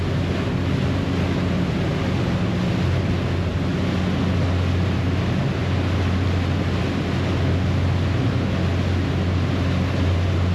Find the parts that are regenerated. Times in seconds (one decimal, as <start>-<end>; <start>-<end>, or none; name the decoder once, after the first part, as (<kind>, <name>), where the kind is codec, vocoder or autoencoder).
none